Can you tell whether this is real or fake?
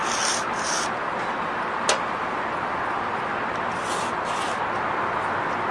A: real